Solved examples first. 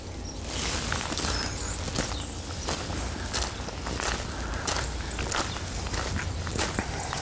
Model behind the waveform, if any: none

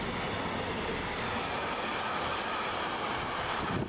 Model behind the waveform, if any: none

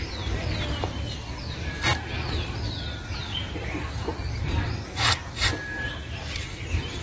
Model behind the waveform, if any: none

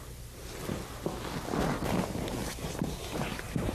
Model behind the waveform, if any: none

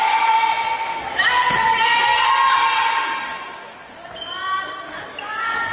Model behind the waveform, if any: none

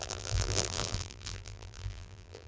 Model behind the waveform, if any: vocoder, BigVGAN v2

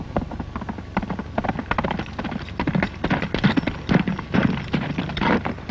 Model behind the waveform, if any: vocoder, BigVGAN v2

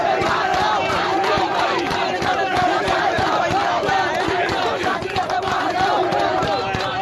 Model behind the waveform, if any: vocoder, BigVGAN v2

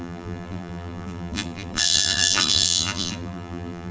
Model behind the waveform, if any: vocoder, BigVGAN v2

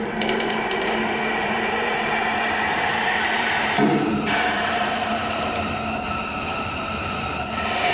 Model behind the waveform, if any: vocoder, BigVGAN v2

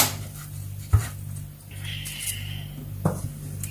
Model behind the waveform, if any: none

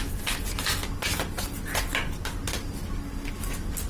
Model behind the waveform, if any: none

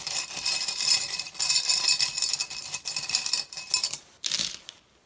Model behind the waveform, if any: none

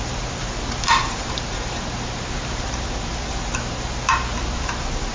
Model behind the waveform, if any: vocoder, BigVGAN v2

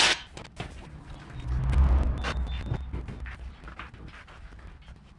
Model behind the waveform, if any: none